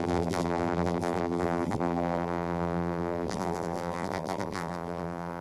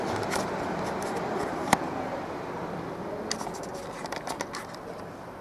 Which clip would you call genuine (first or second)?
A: second